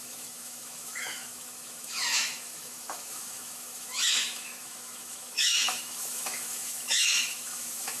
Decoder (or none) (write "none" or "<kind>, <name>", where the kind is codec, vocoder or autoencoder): autoencoder, DAC-VAE